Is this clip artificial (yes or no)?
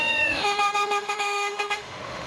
yes